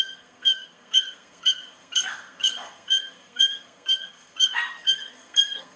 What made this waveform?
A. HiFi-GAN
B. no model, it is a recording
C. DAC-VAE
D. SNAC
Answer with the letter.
D